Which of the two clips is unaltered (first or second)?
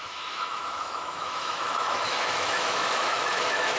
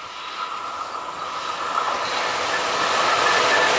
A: second